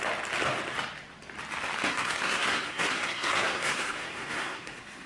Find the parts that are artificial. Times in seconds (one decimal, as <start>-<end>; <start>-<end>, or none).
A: 1.9-5.1